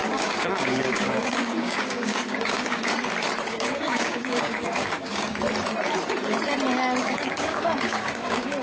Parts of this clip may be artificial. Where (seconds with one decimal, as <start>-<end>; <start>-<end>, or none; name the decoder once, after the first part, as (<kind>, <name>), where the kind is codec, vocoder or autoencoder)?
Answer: 0.0-2.9 (codec, DAC); 3.5-5.3; 7.0-8.6

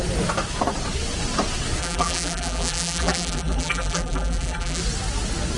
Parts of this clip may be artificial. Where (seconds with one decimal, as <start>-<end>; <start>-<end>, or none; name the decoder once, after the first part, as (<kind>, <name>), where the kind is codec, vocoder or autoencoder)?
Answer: 1.8-4.8 (vocoder, BigVGAN v2)

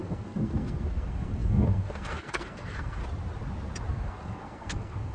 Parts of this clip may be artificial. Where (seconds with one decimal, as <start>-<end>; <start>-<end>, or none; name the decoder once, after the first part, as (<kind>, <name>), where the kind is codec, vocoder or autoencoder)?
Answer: 0.0-3.0 (codec, SNAC); 3.9-5.1

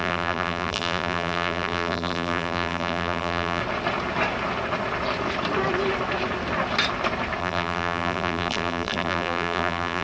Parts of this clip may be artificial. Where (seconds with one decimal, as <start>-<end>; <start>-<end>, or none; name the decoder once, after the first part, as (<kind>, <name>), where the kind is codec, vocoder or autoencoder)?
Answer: 0.0-3.6 (vocoder, BigVGAN v2); 7.4-10.0

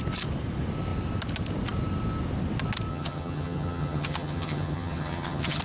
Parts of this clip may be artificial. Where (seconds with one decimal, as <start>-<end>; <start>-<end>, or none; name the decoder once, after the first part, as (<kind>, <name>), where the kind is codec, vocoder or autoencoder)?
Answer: 2.9-5.6 (vocoder, HiFi-GAN)

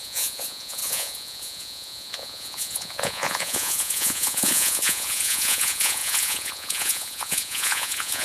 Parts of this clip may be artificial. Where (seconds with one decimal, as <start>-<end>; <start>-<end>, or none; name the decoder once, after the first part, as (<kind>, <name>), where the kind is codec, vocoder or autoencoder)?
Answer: 0.0-8.2 (vocoder, Vocos)